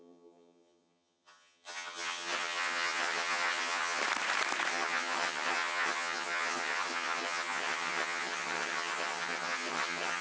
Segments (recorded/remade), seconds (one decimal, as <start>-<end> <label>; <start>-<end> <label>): 0.0-4.0 remade; 4.0-4.7 recorded; 4.7-10.2 remade